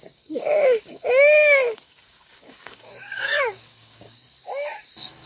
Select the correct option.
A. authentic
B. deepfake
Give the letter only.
B